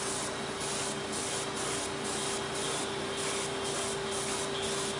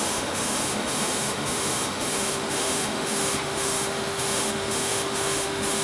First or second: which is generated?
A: second